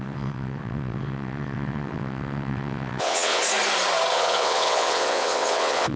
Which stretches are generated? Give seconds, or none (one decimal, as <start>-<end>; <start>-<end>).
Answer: 0.0-3.4; 4.1-6.0

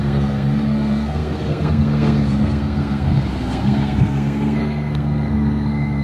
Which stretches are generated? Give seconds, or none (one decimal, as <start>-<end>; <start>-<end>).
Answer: 0.0-6.0

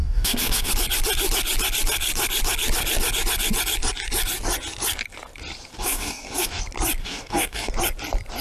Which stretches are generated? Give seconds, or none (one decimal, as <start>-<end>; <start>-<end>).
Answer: 0.0-0.7; 5.7-6.6; 7.0-7.7

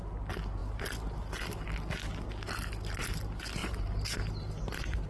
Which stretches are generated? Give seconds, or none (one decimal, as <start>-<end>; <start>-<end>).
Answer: 3.6-4.3

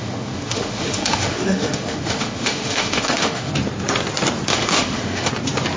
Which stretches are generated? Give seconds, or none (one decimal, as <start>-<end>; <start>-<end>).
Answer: 0.0-3.5; 4.5-5.3

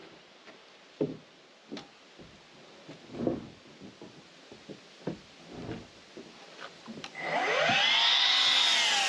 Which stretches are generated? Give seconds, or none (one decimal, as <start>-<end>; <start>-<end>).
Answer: 0.0-1.4